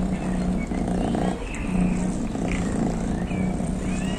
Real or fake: real